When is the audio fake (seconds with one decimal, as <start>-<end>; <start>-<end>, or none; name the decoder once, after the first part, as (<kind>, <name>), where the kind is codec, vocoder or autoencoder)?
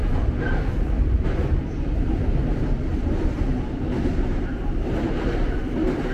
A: 4.3-5.6 (vocoder, BigVGAN v2)